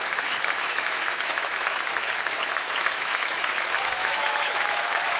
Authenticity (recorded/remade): remade